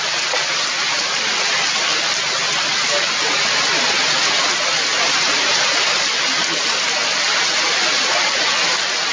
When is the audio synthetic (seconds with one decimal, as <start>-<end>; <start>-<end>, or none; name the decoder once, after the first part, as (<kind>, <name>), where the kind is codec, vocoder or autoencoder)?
none